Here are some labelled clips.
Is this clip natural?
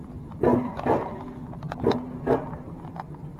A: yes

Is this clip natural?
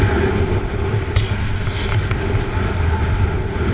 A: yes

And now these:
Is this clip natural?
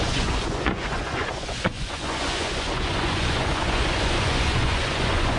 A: no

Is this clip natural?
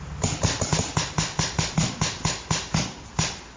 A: yes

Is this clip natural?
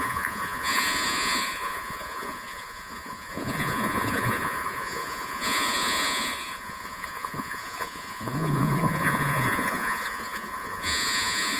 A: no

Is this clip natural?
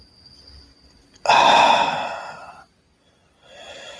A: yes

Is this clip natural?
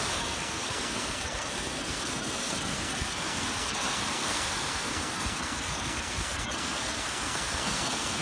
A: no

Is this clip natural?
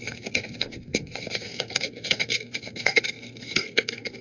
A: no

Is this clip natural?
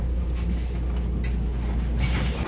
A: yes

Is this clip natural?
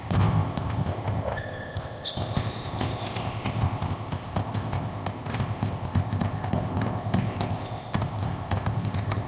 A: no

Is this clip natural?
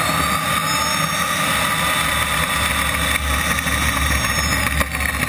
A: yes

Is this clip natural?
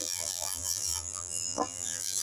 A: no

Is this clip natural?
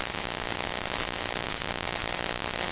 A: yes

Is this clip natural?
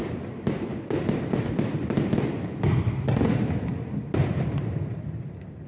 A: yes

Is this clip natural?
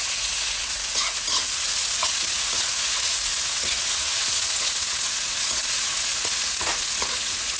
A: no